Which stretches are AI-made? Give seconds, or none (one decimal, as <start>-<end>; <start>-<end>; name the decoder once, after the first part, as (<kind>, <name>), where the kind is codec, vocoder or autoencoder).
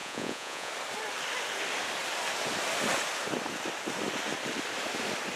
0.0-0.7 (vocoder, Vocos)